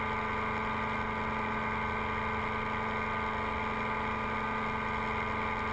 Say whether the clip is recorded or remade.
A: recorded